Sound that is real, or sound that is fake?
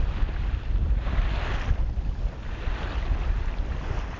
real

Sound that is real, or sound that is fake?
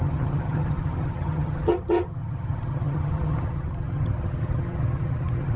fake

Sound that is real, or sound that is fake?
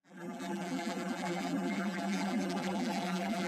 fake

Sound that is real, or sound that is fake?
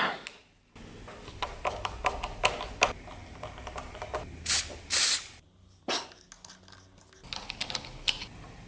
real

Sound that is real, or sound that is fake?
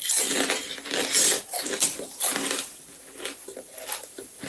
fake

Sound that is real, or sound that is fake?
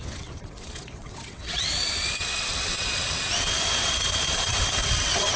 fake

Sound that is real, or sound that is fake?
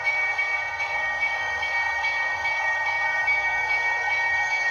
fake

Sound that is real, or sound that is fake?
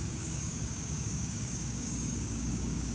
fake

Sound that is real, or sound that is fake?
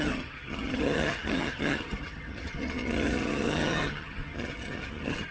fake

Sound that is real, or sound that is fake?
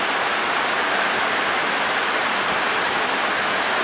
real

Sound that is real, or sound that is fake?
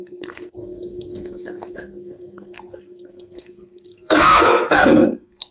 fake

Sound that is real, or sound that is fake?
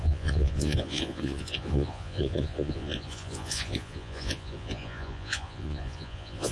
fake